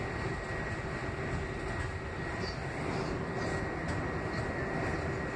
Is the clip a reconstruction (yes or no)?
no